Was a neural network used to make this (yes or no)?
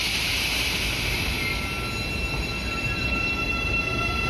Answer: no